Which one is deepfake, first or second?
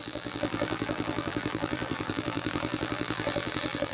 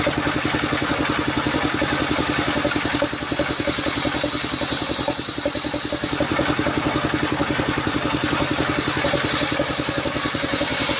first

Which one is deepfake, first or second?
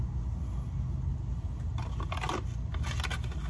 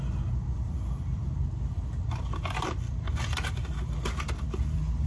second